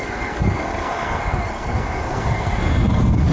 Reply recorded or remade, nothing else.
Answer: remade